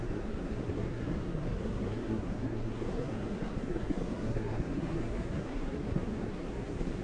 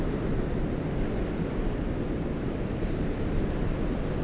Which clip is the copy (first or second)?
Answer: first